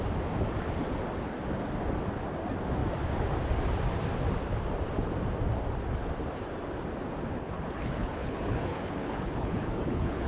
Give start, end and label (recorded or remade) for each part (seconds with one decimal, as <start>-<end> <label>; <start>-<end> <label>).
0.0-7.4 recorded; 7.4-10.3 remade